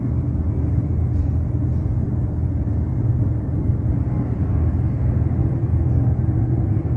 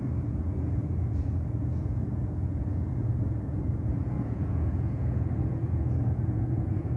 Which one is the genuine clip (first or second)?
first